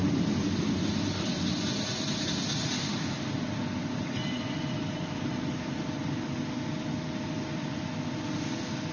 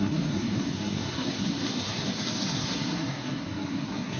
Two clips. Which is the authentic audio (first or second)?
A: first